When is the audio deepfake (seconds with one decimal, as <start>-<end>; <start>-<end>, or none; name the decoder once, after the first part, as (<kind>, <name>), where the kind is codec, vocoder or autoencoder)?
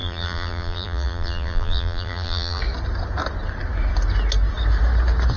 0.0-2.6 (vocoder, BigVGAN v2)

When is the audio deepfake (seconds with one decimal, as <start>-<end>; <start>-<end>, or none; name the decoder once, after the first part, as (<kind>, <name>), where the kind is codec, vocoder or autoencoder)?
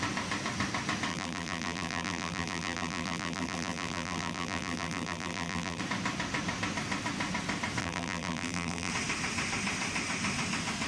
1.1-5.8 (vocoder, BigVGAN v2); 7.8-8.9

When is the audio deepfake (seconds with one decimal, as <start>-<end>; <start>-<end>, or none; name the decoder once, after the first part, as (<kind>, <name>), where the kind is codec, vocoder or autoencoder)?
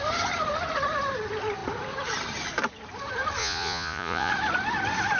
3.4-4.3 (vocoder, Vocos)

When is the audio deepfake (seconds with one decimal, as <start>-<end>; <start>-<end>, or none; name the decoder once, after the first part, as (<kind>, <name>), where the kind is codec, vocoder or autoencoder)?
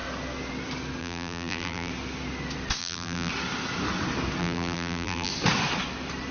1.0-1.9 (vocoder, BigVGAN v2); 2.8-3.3; 4.4-5.3